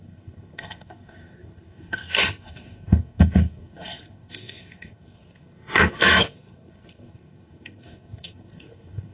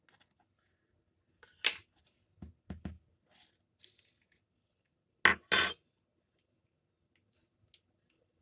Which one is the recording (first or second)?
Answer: second